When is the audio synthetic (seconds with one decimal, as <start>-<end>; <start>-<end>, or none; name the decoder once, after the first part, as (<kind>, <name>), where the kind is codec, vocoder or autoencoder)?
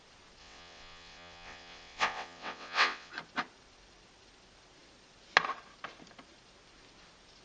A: 0.4-3.1 (vocoder, WaveNeXt)